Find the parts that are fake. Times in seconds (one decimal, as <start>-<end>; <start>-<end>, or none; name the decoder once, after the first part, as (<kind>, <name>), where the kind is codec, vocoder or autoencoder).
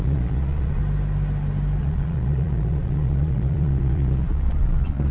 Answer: 0.0-0.8 (vocoder, Vocos); 1.8-5.1